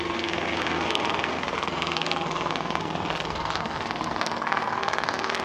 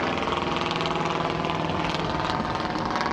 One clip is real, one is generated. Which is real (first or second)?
second